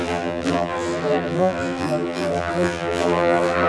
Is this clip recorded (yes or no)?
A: no